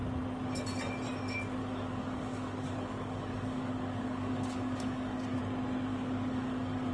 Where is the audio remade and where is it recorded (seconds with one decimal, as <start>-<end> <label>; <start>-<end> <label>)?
0.0-1.6 recorded; 1.6-5.4 remade; 5.4-5.9 recorded; 5.9-6.9 remade